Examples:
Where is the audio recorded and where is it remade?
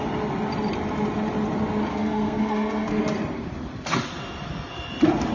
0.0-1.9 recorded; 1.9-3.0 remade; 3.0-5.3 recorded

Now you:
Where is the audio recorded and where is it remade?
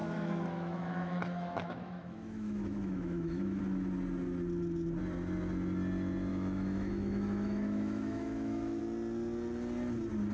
0.0-3.6 remade; 3.6-6.3 recorded; 6.3-8.8 remade; 8.8-10.3 recorded